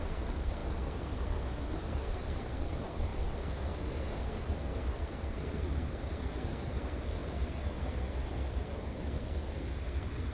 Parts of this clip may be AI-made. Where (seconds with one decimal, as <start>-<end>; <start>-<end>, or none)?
0.0-10.3